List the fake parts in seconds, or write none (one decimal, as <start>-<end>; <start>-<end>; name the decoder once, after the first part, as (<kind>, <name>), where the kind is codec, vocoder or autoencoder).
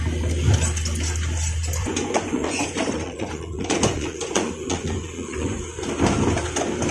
1.8-5.6 (vocoder, Vocos)